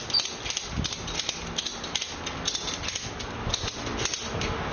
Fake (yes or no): no